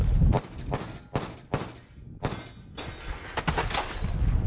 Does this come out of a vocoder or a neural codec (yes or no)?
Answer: no